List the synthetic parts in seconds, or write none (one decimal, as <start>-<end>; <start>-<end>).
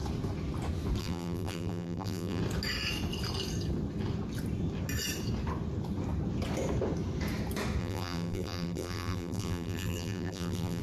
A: 1.0-2.4; 7.8-10.8